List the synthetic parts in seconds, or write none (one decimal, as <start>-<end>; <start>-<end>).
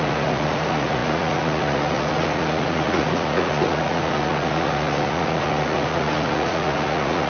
0.0-7.3